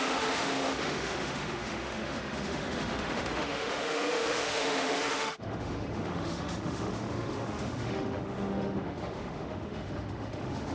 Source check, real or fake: fake